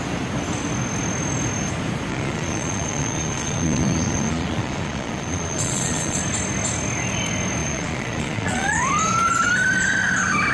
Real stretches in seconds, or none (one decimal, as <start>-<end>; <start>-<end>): 0.0-2.1; 6.2-7.6; 8.8-10.5